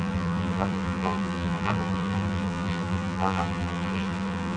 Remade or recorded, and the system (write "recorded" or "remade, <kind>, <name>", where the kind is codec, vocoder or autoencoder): remade, vocoder, BigVGAN v2